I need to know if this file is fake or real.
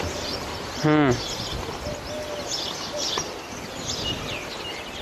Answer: real